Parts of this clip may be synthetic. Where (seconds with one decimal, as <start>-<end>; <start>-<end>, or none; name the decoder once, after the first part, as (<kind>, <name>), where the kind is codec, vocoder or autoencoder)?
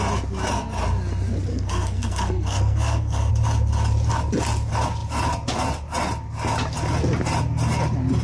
1.5-3.3 (codec, SNAC)